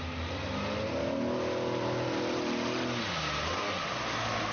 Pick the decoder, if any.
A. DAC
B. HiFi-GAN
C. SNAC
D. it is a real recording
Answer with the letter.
D